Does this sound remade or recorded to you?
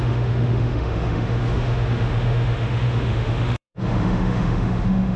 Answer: remade